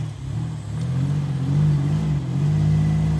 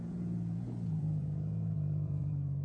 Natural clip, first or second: first